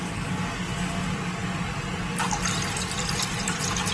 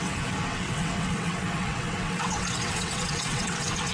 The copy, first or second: second